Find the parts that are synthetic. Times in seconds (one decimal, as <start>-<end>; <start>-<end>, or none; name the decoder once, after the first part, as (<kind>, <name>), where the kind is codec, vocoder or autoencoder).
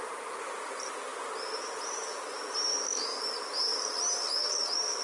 2.7-3.2 (codec, DAC)